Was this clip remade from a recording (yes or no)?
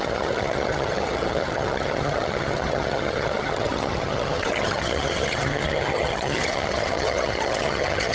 yes